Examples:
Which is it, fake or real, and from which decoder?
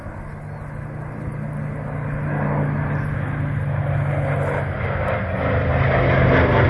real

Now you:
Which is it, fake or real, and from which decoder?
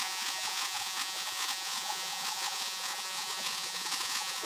fake, vocoder, Vocos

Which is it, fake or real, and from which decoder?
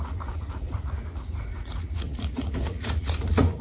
fake, vocoder, Vocos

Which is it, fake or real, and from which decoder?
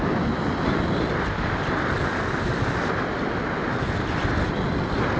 real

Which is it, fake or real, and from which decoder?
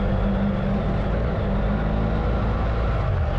real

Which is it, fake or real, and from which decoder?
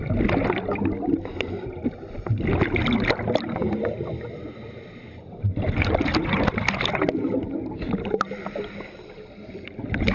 real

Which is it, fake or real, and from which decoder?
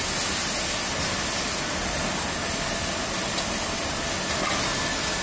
real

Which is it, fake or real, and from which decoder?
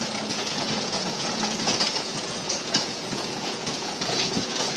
fake, vocoder, Vocos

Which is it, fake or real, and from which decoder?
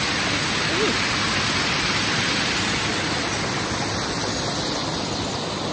real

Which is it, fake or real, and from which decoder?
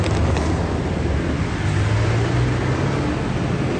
real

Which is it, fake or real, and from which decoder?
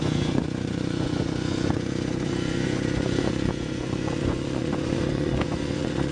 fake, vocoder, Vocos